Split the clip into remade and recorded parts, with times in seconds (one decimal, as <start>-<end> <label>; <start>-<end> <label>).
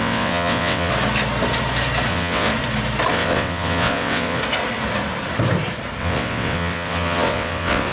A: 0.0-0.9 remade; 0.9-2.1 recorded; 2.1-2.5 remade; 2.5-3.1 recorded; 3.1-4.4 remade; 4.4-6.0 recorded; 6.0-7.9 remade